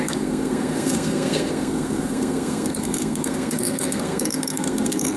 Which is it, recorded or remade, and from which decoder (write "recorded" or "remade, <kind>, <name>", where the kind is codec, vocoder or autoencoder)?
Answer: remade, codec, SNAC